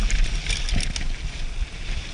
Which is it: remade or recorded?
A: recorded